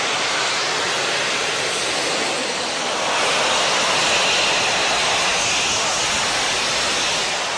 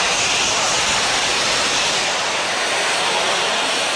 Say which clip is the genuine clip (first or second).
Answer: first